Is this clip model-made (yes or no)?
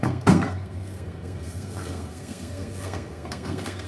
yes